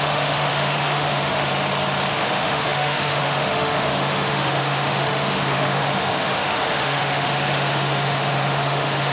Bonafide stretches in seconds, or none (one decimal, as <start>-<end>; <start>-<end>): 1.5-2.1